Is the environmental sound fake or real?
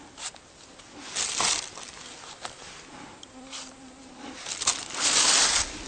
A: real